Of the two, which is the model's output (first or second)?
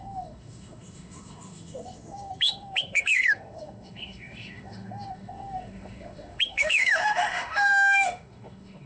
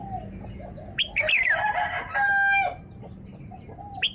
first